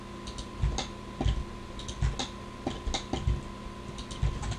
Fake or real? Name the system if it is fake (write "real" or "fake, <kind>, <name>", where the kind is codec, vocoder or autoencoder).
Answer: real